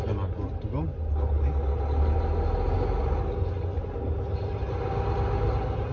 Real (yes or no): yes